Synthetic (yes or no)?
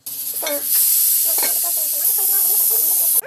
no